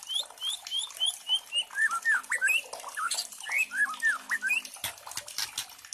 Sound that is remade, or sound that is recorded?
recorded